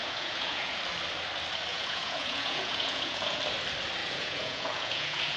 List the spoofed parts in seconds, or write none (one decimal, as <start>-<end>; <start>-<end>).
0.0-0.8; 1.7-3.4; 4.0-5.4